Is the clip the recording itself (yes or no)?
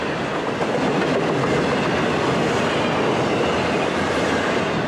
yes